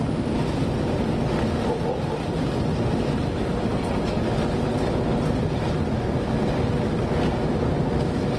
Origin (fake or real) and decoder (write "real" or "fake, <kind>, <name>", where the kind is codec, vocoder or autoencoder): real